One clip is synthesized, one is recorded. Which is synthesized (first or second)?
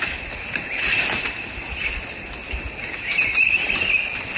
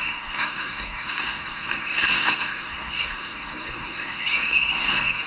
second